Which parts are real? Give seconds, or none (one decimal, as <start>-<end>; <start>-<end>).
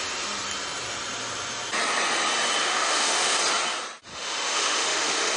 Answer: 0.0-2.6; 3.4-4.1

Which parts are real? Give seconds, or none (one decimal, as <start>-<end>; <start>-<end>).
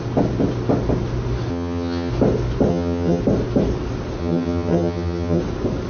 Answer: 0.0-1.5; 2.1-2.7; 3.2-4.2; 5.4-5.9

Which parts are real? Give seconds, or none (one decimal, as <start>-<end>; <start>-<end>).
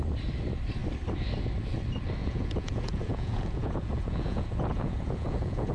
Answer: 0.0-2.2